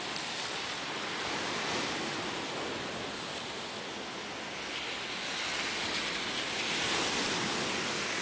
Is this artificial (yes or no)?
no